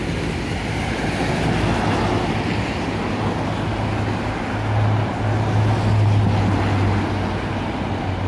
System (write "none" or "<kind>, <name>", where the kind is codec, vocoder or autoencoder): none